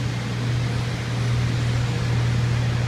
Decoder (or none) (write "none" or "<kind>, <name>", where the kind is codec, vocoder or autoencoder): none